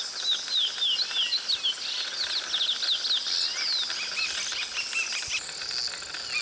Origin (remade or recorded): recorded